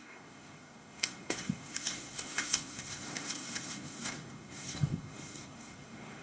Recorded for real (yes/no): no